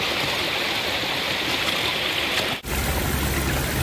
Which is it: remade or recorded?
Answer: recorded